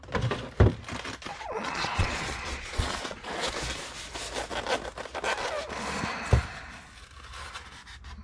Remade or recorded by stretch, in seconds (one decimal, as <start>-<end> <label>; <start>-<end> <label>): 0.0-1.3 recorded; 1.3-3.3 remade; 3.3-8.2 recorded